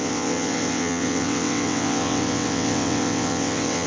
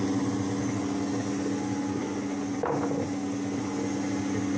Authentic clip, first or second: second